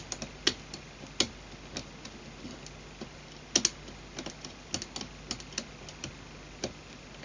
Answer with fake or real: real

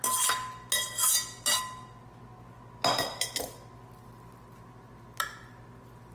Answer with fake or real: real